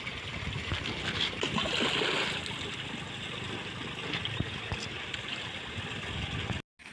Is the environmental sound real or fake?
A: real